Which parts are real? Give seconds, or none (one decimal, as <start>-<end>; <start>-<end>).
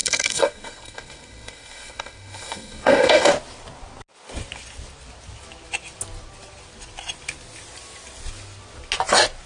3.3-9.5